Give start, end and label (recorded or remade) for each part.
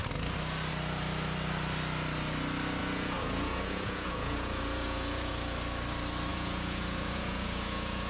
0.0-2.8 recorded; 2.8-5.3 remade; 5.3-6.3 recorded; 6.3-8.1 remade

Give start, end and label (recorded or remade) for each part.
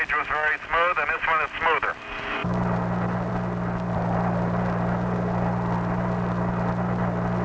0.0-7.4 recorded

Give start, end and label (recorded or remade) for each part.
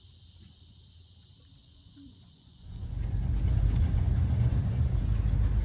0.0-1.6 recorded; 1.6-5.0 remade; 5.0-5.6 recorded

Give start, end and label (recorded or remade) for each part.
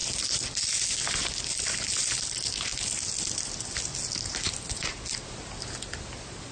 0.0-6.5 recorded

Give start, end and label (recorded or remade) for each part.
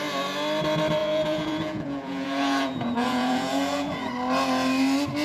0.0-1.0 recorded; 1.0-4.1 remade; 4.1-5.2 recorded